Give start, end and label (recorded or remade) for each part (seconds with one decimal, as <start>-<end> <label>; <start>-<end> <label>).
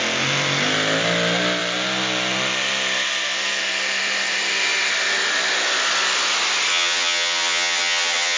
0.0-6.7 recorded; 6.7-8.4 remade